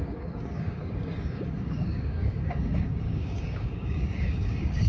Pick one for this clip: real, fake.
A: fake